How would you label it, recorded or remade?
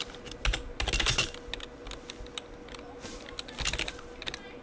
recorded